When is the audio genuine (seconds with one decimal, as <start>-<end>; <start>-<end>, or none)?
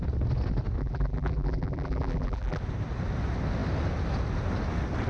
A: 0.0-0.8; 2.6-5.1